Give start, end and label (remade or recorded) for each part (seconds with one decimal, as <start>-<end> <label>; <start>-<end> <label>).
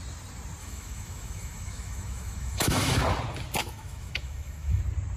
0.0-0.6 recorded; 0.6-3.0 remade; 3.0-3.6 recorded; 3.6-4.8 remade; 4.8-5.2 recorded